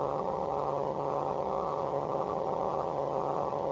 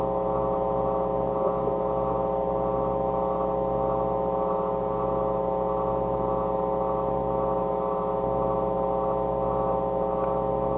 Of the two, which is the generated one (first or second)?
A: first